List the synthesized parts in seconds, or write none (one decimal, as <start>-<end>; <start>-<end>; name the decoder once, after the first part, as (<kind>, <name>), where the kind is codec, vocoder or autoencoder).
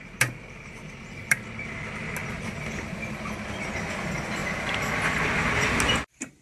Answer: none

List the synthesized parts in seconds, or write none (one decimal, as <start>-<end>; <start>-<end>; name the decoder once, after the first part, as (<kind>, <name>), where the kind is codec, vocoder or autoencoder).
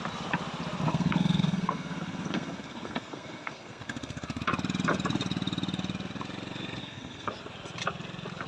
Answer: 0.9-4.4 (codec, SNAC); 6.8-7.3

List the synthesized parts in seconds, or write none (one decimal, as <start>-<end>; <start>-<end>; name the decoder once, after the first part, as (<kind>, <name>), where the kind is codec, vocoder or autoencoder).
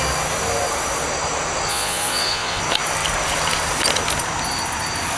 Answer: 1.7-2.6 (vocoder, Vocos)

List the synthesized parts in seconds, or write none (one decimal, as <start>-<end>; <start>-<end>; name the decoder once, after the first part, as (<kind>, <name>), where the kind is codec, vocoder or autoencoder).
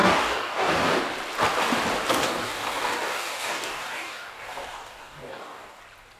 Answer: 0.0-1.0 (codec, DAC); 2.1-5.8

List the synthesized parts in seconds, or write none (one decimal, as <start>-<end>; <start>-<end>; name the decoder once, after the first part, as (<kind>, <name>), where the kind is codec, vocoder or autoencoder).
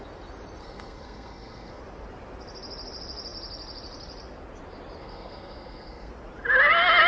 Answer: 0.6-1.8 (codec, SNAC); 5.0-6.1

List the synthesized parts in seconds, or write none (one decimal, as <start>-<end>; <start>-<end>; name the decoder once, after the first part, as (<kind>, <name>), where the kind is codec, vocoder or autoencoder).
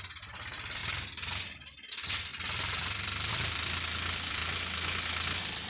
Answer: 0.0-0.8 (vocoder, BigVGAN v2); 1.9-4.4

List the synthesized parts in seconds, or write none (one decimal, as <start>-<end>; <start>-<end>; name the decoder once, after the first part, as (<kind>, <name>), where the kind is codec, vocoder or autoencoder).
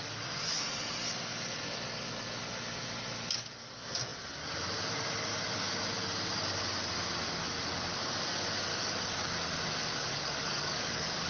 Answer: 8.7-9.3 (codec, DAC); 10.1-11.3